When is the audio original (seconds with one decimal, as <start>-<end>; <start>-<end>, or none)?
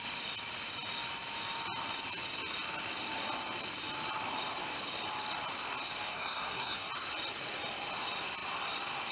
0.0-6.1; 6.9-9.1